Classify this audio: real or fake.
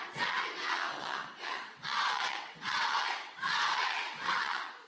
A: fake